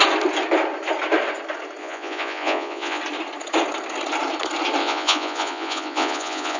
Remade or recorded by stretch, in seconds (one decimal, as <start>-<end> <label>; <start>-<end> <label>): 0.0-1.8 recorded; 1.8-3.0 remade; 3.0-4.8 recorded; 4.8-6.6 remade